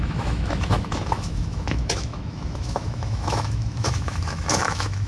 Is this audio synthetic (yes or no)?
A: yes